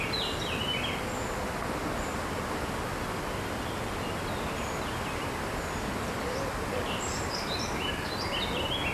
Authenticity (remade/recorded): recorded